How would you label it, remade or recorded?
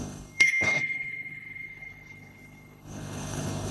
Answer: remade